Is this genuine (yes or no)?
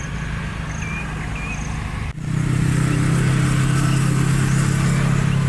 yes